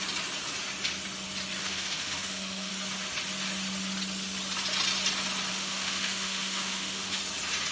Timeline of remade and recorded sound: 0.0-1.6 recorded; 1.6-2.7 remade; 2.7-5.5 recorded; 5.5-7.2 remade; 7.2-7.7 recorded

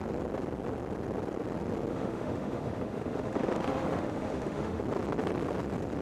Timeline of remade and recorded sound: 0.0-1.9 recorded; 1.9-4.8 remade; 4.8-6.0 recorded

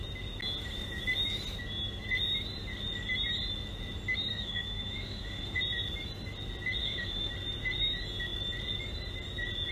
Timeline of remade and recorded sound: 0.0-4.3 recorded; 4.3-5.6 remade; 5.6-6.8 recorded; 6.8-7.3 remade; 7.3-9.7 recorded

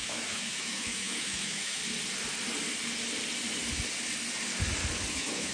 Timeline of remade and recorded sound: 0.0-1.8 remade; 1.8-5.1 recorded; 5.1-5.5 remade

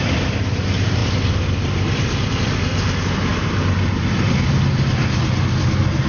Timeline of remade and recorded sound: 0.0-6.1 recorded